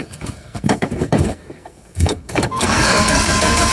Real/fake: fake